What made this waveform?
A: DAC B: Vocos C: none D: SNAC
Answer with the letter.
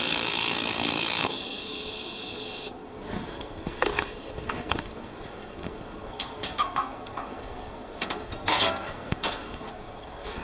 D